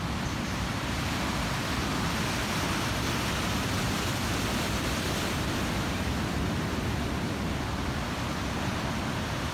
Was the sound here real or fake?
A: real